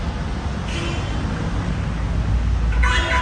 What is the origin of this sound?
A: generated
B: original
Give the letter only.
B